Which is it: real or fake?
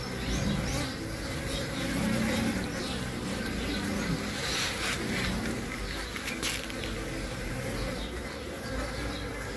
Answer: real